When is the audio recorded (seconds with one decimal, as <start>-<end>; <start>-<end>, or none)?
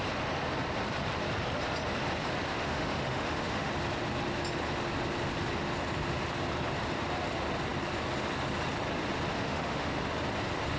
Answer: 0.0-2.5; 3.7-9.3; 9.9-10.8